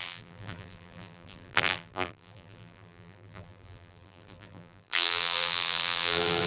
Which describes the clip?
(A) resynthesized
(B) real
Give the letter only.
A